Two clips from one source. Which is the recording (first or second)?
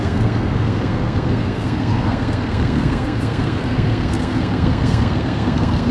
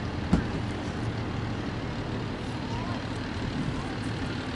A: second